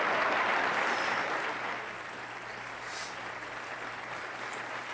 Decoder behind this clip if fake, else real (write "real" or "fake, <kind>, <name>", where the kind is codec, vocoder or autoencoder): real